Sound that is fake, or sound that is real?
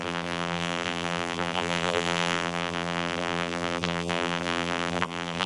fake